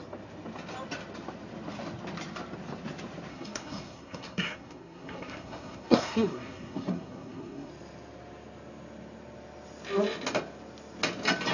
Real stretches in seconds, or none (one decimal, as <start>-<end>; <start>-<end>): 0.0-3.3; 7.7-11.5